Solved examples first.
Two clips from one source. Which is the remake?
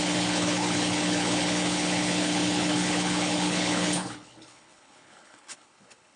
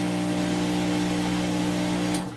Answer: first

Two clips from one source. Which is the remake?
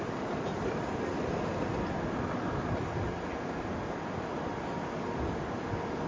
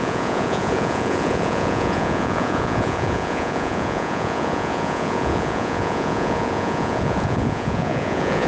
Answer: second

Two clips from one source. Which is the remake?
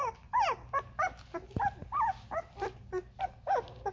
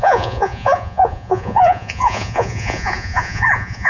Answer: second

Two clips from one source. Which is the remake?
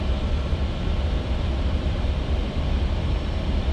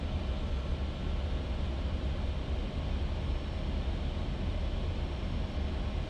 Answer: first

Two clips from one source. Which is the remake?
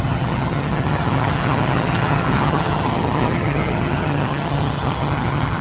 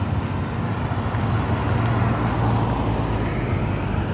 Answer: first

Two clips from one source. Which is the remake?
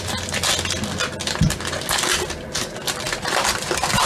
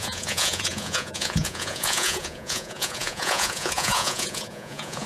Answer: second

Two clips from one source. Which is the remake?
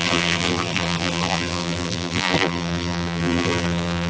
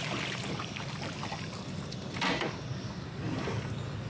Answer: first